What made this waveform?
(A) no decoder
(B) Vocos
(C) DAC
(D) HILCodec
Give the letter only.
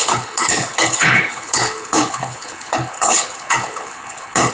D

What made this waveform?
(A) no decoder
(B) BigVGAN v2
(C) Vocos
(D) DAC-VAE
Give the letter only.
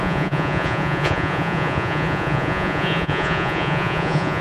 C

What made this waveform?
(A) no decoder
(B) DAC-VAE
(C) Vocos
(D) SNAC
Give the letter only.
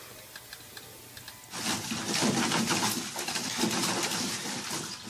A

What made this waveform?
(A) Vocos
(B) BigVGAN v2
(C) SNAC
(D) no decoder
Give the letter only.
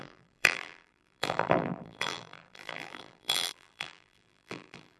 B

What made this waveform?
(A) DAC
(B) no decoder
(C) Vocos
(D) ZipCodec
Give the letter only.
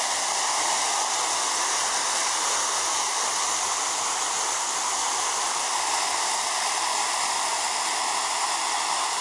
B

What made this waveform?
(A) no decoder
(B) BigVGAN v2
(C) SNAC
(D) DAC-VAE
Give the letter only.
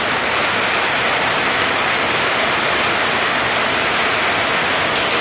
A